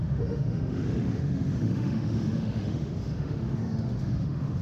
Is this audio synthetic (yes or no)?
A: yes